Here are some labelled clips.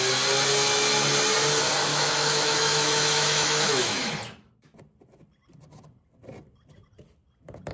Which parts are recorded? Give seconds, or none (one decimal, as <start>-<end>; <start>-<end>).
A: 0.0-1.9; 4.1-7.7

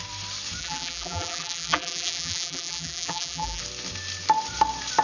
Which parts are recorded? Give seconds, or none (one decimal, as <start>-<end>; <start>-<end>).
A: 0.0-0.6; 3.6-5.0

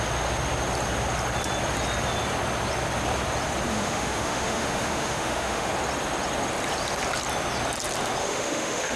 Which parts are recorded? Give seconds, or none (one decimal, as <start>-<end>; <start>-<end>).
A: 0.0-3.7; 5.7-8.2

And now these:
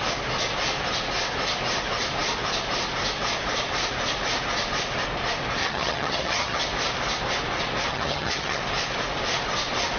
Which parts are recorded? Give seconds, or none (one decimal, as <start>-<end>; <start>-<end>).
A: 0.0-5.6; 6.6-7.9; 8.6-10.0

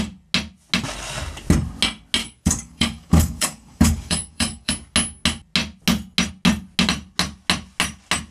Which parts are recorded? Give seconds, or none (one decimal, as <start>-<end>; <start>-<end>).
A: 0.0-2.2; 4.7-8.3